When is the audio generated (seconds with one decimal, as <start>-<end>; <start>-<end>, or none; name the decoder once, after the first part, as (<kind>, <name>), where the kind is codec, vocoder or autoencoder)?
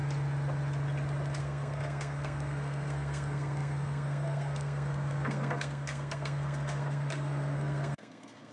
1.4-8.5 (codec, SNAC)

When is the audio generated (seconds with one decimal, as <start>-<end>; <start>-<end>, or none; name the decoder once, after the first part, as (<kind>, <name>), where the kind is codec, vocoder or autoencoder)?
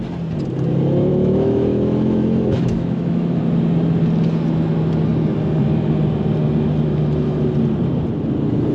1.1-3.4 (autoencoder, DAC-VAE)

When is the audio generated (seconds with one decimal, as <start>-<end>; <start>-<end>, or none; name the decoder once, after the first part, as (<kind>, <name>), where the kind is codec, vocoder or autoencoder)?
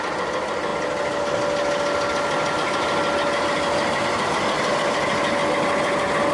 none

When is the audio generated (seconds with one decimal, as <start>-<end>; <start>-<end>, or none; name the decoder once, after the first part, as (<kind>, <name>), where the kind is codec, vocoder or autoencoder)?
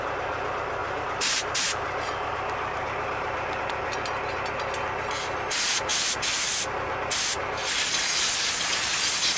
0.8-3.6 (vocoder, BigVGAN v2)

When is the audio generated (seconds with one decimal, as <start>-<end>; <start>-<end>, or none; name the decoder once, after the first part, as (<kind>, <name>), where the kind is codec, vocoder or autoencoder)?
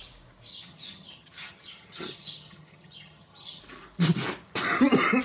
0.5-3.6 (vocoder, HiFi-GAN)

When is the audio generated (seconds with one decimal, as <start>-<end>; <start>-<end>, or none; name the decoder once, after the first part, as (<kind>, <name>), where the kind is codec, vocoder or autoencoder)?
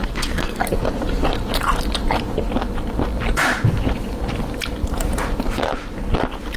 0.0-0.6 (codec, SNAC)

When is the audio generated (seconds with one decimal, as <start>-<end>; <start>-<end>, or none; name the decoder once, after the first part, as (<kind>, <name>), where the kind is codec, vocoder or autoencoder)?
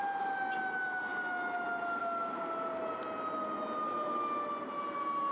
none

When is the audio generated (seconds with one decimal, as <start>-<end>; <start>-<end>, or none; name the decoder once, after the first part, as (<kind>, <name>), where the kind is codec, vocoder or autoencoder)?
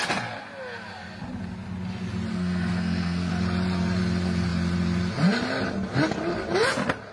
2.3-3.3 (codec, SNAC)